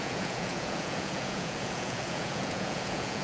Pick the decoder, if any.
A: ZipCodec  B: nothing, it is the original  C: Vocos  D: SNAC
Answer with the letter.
C